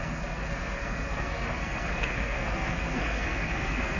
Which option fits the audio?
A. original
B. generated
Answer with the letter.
B